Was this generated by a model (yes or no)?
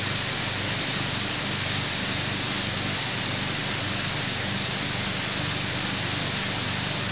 no